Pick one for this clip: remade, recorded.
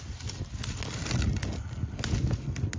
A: recorded